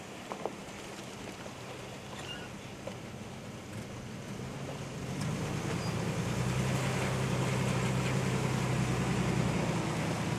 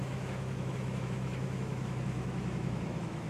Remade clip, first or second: second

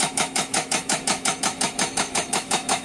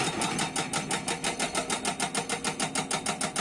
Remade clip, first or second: first